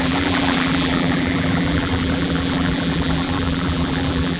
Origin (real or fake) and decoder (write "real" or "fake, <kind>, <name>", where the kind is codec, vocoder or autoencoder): fake, vocoder, BigVGAN v2